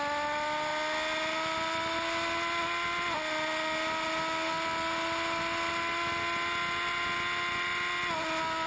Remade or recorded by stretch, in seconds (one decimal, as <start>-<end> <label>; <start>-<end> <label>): 0.0-8.7 recorded